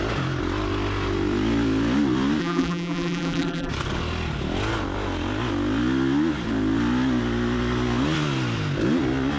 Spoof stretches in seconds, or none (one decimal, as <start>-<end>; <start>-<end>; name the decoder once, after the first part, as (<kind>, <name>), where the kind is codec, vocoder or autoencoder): 2.4-3.7 (vocoder, BigVGAN v2)